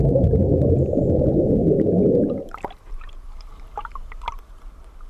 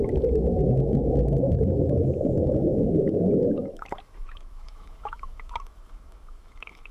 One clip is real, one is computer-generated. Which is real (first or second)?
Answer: first